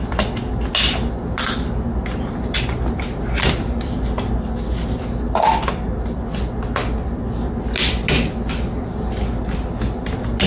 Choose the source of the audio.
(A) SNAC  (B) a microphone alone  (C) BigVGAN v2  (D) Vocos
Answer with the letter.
B